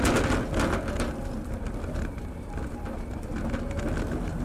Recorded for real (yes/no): yes